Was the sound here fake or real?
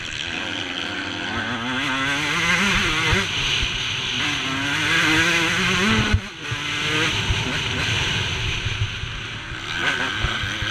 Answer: real